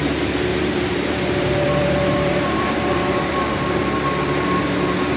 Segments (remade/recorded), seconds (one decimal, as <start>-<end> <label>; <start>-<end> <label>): 0.0-0.5 recorded; 0.5-3.6 remade; 3.6-5.2 recorded